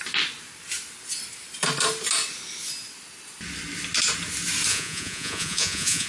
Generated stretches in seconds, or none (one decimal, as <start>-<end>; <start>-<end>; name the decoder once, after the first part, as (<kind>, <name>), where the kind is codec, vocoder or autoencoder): 4.7-6.1 (vocoder, Vocos)